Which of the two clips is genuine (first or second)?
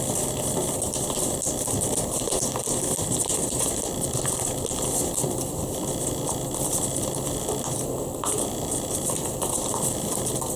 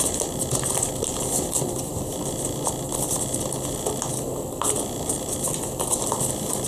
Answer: second